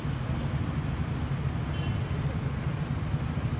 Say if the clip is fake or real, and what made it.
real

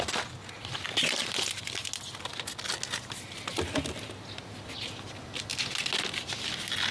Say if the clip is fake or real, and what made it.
real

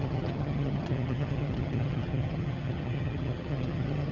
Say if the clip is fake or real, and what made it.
fake, vocoder, HiFi-GAN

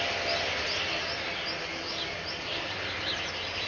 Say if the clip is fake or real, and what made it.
real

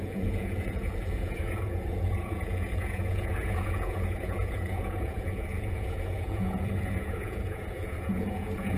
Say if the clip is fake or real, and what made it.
fake, vocoder, Vocos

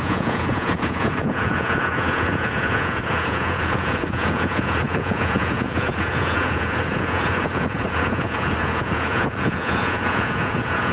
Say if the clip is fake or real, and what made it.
fake, vocoder, Vocos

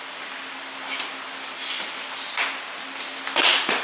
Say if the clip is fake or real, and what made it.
real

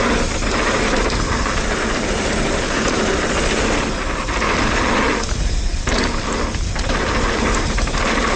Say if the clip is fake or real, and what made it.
real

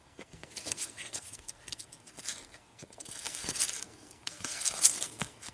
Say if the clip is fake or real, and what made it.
fake, codec, SNAC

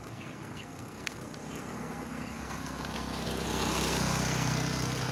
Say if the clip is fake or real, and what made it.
fake, codec, SNAC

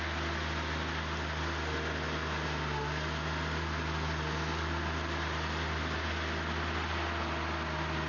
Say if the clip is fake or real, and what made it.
real